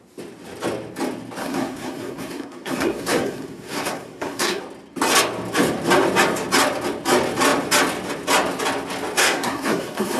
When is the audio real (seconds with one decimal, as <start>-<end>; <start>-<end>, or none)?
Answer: 0.0-1.4; 4.6-9.2